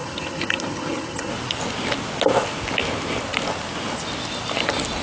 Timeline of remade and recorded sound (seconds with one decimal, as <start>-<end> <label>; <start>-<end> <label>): 0.0-1.3 remade; 1.3-5.0 recorded